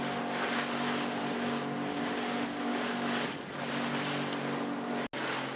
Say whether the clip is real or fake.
real